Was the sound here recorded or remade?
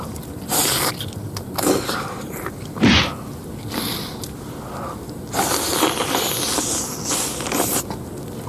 recorded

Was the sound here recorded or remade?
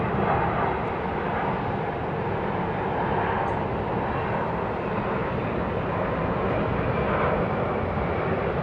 recorded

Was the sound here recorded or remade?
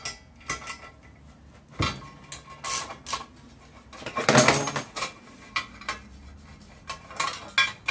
recorded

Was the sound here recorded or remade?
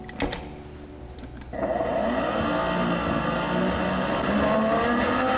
recorded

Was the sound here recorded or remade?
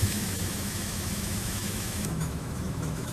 remade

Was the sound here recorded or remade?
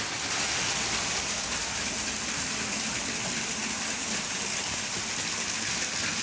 recorded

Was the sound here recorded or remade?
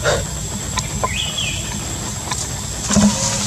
recorded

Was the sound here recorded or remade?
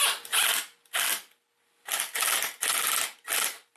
recorded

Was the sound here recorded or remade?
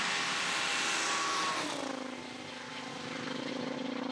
recorded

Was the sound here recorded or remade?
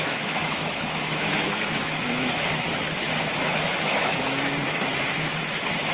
remade